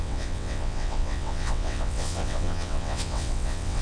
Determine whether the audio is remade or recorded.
remade